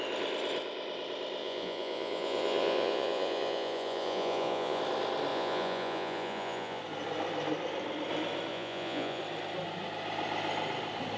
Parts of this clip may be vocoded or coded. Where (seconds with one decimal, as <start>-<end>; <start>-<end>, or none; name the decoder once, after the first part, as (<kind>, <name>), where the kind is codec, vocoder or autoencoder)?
1.4-4.8 (vocoder, Vocos); 5.3-6.8; 8.5-9.2